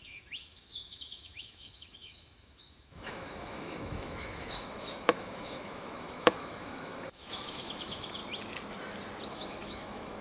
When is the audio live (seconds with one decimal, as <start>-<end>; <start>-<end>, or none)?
8.2-9.3